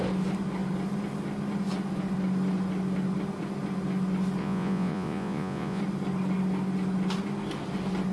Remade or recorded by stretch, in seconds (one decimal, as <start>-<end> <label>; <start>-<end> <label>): 0.0-4.4 recorded; 4.4-5.8 remade; 5.8-8.1 recorded